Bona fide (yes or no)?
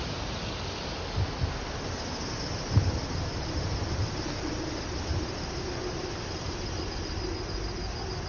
yes